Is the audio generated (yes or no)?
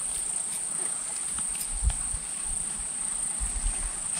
no